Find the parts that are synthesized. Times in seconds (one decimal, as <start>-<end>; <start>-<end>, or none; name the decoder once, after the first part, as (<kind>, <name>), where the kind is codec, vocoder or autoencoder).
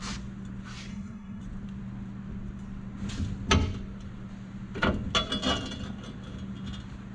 0.9-1.4 (codec, SNAC)